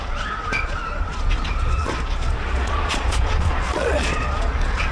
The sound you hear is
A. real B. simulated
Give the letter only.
B